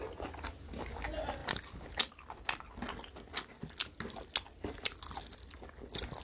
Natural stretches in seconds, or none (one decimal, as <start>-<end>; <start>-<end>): 0.0-6.2